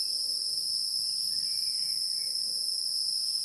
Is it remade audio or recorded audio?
recorded